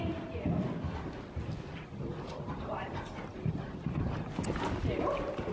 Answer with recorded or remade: recorded